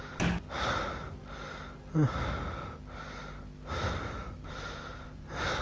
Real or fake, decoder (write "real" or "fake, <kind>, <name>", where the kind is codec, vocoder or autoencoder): real